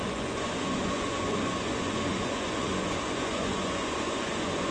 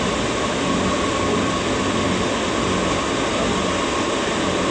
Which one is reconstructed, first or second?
first